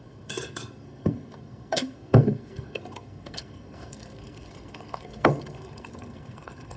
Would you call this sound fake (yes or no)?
yes